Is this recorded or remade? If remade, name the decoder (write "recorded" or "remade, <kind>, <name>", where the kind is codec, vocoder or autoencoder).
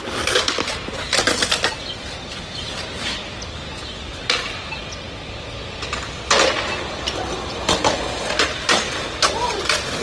recorded